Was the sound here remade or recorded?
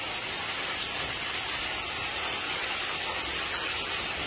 recorded